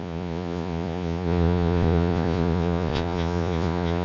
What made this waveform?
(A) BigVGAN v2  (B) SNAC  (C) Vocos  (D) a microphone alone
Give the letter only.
C